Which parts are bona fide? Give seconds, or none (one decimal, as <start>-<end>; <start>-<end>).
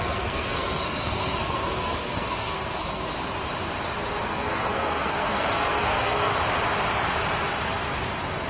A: 3.1-4.2; 6.3-8.5